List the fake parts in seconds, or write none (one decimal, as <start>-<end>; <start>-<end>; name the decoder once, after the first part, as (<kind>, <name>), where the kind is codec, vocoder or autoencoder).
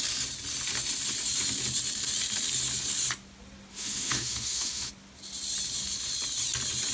3.7-4.9 (autoencoder, DAC-VAE)